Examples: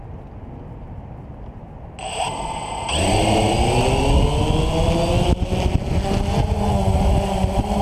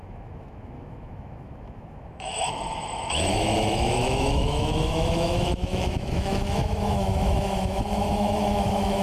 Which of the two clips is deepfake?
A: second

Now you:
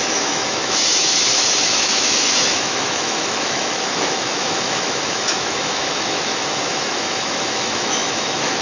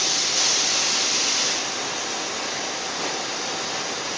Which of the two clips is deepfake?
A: first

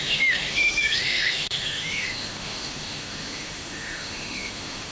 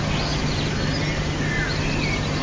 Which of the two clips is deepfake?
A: first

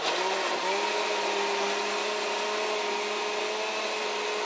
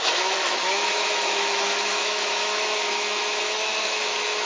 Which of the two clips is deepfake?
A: second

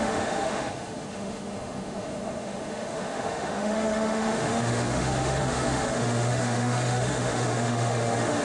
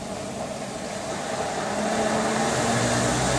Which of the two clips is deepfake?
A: first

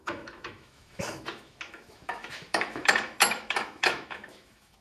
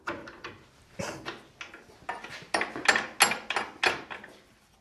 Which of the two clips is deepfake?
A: first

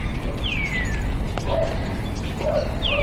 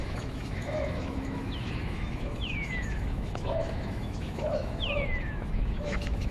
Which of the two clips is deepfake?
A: second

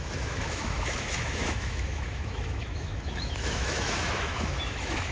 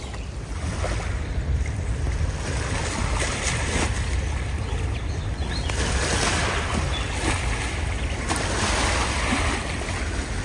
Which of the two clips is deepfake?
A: first